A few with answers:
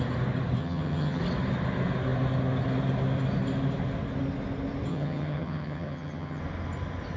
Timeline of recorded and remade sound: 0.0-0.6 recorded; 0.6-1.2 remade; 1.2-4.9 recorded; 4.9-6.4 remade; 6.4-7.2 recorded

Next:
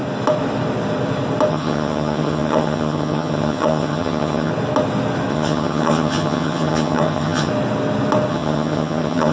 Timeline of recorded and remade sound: 0.0-1.5 recorded; 1.5-4.5 remade; 4.5-5.3 recorded; 5.3-7.5 remade; 7.5-8.3 recorded; 8.3-9.3 remade

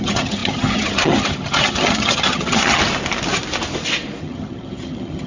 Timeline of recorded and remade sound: 0.0-2.8 remade; 2.8-4.2 recorded; 4.2-5.3 remade

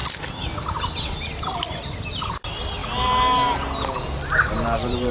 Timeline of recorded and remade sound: 0.0-5.1 recorded

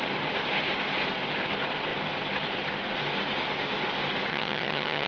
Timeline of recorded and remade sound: 0.0-4.3 recorded; 4.3-5.1 remade

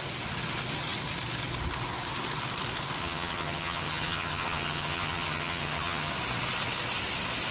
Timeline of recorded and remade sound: 0.0-3.0 recorded; 3.0-6.1 remade; 6.1-7.5 recorded

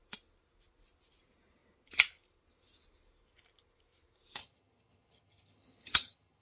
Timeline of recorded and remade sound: 0.0-4.4 recorded; 4.4-6.4 remade

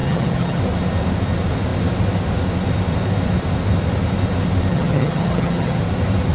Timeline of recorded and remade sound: 0.0-0.6 remade; 0.6-4.7 recorded; 4.7-5.8 remade; 5.8-6.3 recorded